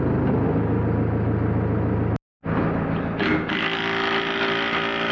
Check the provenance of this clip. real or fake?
real